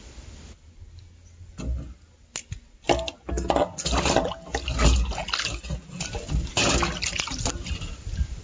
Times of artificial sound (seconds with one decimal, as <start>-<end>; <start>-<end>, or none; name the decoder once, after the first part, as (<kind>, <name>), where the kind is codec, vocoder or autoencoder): none